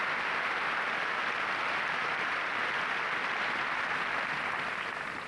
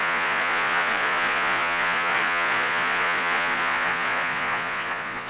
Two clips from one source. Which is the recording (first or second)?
first